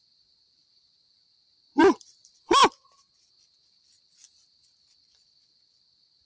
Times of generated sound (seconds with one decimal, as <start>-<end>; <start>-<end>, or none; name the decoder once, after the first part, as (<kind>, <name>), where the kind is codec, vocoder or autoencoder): 0.0-2.6 (vocoder, BigVGAN v2); 3.3-6.3